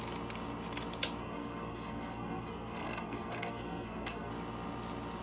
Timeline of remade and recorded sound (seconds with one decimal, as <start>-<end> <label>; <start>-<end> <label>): 0.0-1.2 recorded; 1.2-4.3 remade; 4.3-5.2 recorded